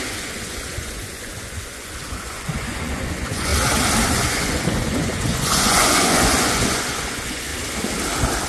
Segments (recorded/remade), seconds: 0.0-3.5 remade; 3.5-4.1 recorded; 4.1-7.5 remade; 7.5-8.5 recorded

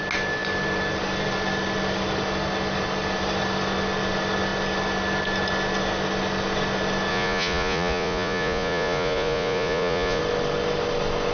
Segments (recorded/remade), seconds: 0.0-7.1 recorded; 7.1-10.2 remade; 10.2-11.3 recorded

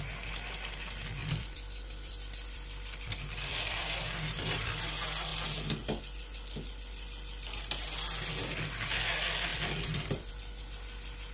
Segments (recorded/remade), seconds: 0.0-1.2 recorded; 1.2-4.8 remade; 4.8-9.5 recorded; 9.5-10.3 remade; 10.3-11.3 recorded

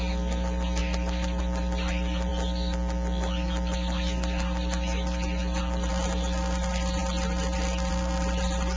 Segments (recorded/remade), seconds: 0.0-8.8 recorded